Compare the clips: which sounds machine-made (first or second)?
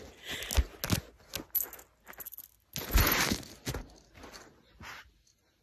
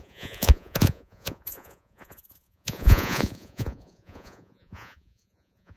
second